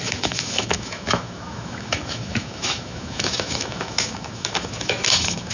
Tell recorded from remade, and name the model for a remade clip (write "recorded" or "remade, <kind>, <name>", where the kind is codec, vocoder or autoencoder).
remade, autoencoder, DAC-VAE